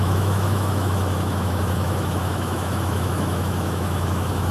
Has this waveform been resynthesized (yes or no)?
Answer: yes